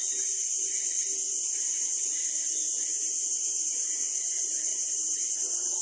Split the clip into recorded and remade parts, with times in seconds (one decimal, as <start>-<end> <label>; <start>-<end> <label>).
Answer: 0.0-2.9 recorded; 2.9-4.0 remade; 4.0-4.7 recorded; 4.7-5.3 remade; 5.3-5.8 recorded